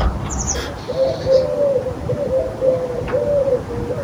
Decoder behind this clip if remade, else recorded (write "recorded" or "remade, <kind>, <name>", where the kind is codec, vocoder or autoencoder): recorded